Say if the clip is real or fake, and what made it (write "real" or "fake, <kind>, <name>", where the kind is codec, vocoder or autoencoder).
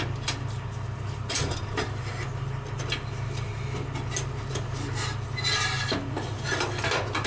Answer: real